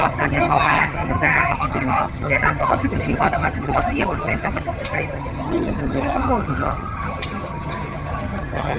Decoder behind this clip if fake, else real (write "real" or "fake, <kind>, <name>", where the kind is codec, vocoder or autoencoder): fake, vocoder, HiFi-GAN